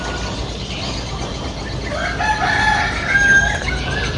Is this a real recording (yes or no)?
yes